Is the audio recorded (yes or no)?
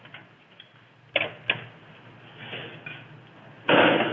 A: yes